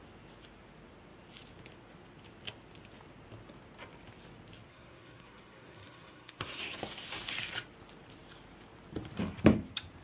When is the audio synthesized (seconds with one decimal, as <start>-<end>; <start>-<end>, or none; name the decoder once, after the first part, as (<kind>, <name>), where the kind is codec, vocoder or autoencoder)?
4.7-6.6 (codec, SNAC)